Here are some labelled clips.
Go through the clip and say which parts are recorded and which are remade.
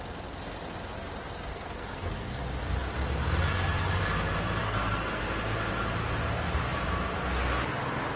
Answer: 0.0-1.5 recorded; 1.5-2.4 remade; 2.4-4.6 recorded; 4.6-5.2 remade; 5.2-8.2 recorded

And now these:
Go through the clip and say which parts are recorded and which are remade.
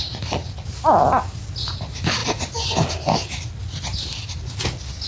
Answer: 0.0-5.1 recorded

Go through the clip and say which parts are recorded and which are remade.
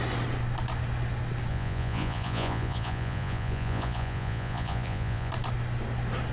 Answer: 0.0-1.5 recorded; 1.5-5.3 remade; 5.3-6.3 recorded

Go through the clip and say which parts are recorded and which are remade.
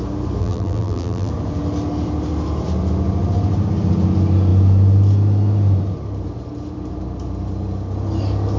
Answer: 0.0-0.4 recorded; 0.4-1.3 remade; 1.3-8.6 recorded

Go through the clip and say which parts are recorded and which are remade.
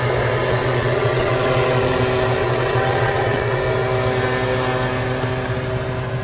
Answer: 0.0-0.6 recorded; 0.6-2.0 remade; 2.0-2.4 recorded; 2.4-3.6 remade; 3.6-6.2 recorded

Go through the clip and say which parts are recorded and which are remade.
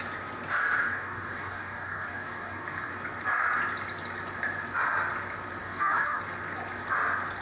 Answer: 0.0-0.8 recorded; 0.8-2.9 remade; 2.9-5.6 recorded; 5.6-6.2 remade; 6.2-7.4 recorded